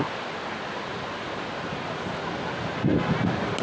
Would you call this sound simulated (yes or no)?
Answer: no